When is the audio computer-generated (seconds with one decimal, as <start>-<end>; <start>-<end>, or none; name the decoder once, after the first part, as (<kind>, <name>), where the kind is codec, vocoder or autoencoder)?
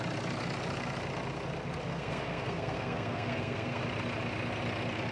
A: 1.9-3.8 (codec, SNAC)